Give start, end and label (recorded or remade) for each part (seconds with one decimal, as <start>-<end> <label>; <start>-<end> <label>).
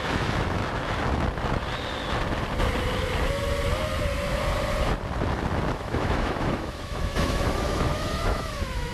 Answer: 0.0-0.6 remade; 0.6-5.7 recorded; 5.7-8.9 remade